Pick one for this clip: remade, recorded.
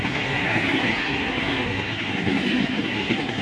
remade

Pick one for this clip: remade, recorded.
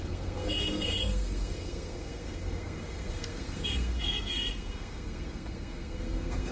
remade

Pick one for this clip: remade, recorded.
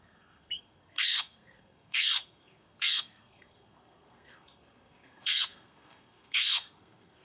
remade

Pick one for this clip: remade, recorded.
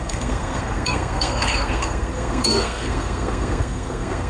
remade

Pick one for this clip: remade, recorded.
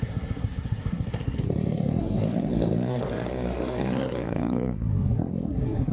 remade